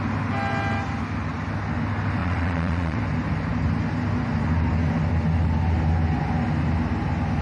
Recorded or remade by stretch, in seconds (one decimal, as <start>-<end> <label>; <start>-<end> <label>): 0.0-2.2 recorded; 2.2-3.0 remade; 3.0-7.4 recorded